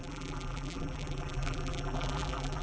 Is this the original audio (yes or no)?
no